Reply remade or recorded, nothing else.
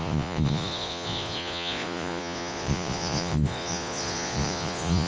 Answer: remade